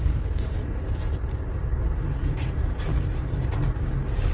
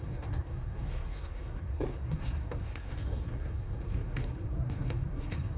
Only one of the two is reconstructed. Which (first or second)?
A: second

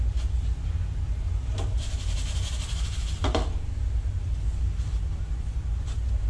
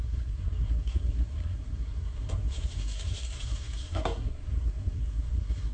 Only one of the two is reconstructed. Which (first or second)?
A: second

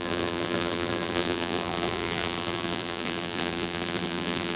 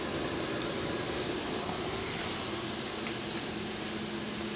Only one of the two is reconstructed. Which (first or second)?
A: first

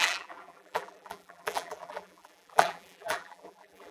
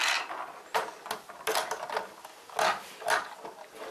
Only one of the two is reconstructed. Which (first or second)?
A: first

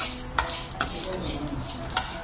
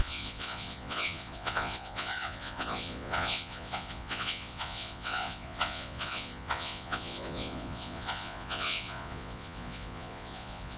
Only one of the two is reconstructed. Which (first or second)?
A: second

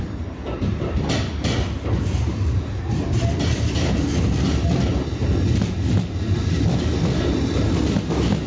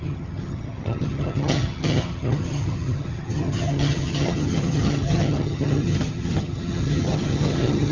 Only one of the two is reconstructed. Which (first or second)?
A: second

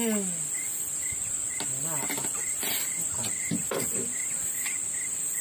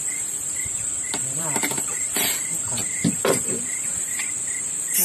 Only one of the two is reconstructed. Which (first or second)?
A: second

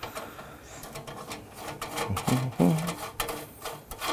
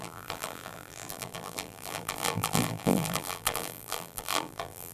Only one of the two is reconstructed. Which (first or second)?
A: second